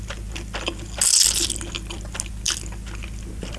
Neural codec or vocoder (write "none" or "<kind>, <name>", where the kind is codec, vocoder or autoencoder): none